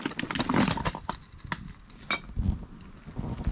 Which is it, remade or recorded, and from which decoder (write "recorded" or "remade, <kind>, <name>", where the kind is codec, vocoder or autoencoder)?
recorded